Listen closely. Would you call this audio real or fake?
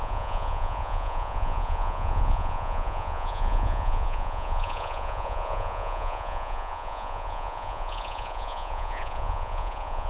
fake